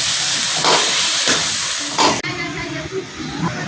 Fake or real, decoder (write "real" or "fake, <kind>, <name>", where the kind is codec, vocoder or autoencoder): real